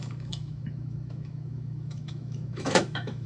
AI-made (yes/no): yes